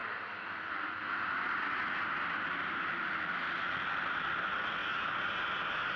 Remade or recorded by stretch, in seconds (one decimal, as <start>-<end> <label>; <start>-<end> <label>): 0.0-6.0 recorded